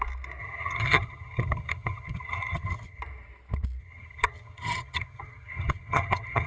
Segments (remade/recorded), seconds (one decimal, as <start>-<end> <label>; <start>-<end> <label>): 0.0-0.4 recorded; 0.4-3.0 remade; 3.0-3.8 recorded; 3.8-6.5 remade